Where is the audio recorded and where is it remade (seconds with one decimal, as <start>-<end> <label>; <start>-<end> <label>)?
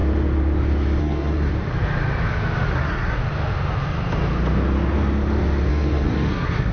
0.0-1.0 recorded; 1.0-1.5 remade; 1.5-2.7 recorded; 2.7-3.2 remade; 3.2-5.7 recorded; 5.7-6.7 remade